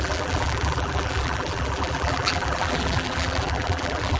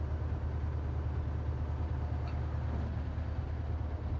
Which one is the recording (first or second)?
second